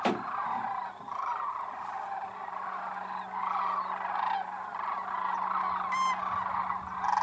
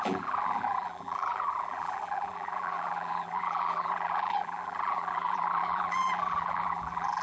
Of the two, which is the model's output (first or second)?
second